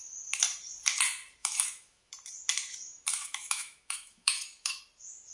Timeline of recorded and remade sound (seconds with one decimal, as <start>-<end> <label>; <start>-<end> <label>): 0.0-1.4 recorded; 1.4-2.1 remade; 2.1-3.1 recorded; 3.1-4.8 remade; 4.8-5.3 recorded